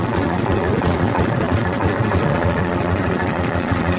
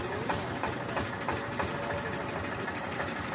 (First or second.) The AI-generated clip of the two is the first